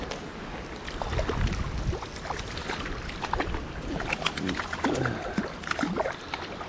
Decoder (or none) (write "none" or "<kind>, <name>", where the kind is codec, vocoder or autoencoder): none